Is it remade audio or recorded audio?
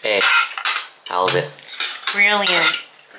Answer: recorded